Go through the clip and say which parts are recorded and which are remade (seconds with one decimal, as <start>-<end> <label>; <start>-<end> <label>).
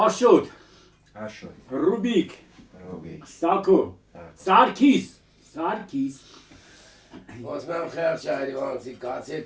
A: 0.0-1.8 recorded; 1.8-4.4 remade; 4.4-9.5 recorded